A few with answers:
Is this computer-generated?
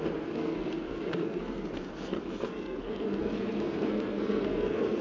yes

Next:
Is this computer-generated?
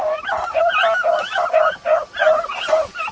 no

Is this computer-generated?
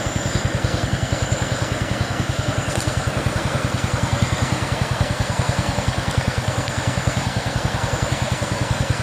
yes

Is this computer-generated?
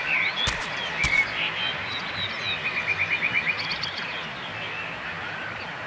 no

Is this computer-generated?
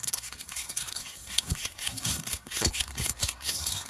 yes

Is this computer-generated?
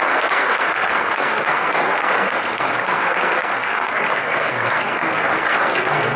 yes